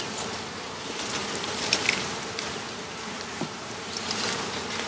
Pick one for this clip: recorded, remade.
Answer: remade